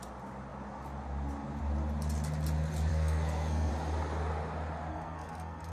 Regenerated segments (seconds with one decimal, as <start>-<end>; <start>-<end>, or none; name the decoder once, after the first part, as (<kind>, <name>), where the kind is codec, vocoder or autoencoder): 2.9-3.7 (codec, SNAC); 4.9-5.7